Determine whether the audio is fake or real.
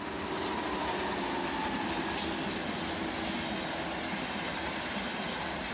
real